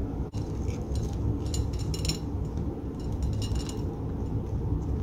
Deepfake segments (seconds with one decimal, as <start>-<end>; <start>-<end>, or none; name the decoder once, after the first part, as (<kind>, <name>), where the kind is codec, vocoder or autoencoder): none